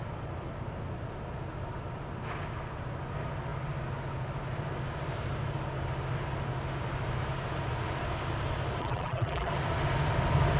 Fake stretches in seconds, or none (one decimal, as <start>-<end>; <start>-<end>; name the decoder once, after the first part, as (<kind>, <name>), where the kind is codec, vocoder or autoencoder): 8.8-9.5 (vocoder, BigVGAN v2)